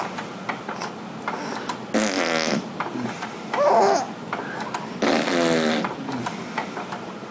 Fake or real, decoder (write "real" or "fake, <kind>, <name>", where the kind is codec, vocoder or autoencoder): real